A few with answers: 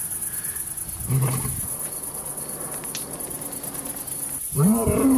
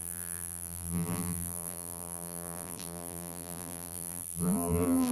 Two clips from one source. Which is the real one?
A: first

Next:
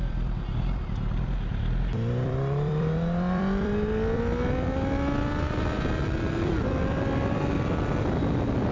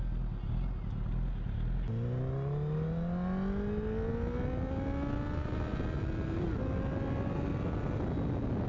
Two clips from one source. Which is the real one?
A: second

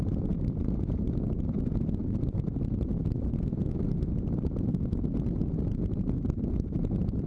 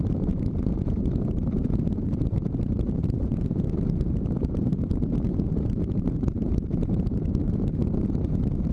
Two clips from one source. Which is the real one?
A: first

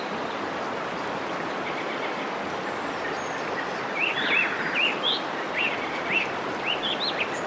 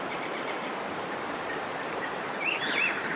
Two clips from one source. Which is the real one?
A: first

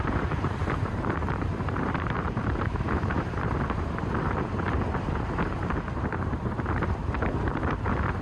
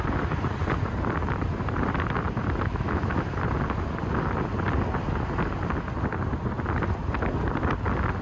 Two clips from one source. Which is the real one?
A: second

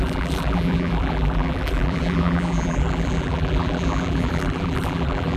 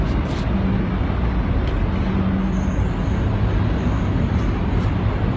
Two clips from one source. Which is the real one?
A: second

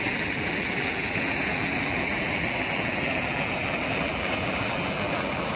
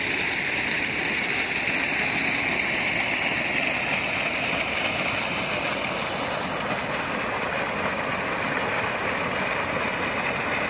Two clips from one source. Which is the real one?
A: second